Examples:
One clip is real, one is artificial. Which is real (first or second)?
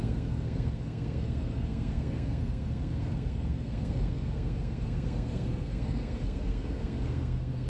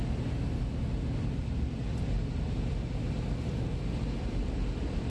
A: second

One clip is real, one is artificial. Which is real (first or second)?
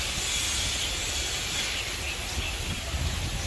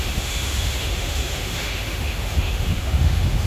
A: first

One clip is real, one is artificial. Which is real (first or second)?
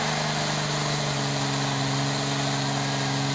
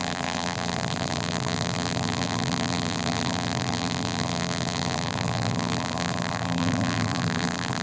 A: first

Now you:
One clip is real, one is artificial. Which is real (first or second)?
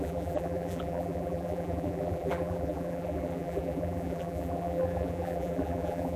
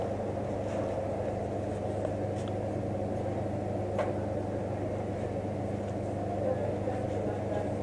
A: second